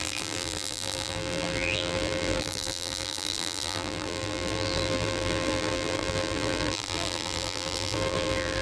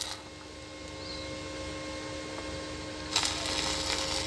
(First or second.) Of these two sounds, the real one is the second